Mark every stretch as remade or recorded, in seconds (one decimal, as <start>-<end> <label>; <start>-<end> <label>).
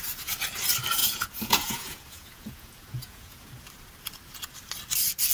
0.0-1.0 recorded; 1.0-3.5 remade; 3.5-5.3 recorded